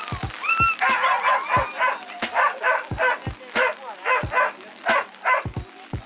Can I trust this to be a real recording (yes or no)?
yes